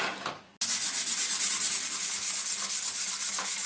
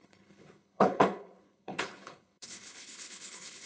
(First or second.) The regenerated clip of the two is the second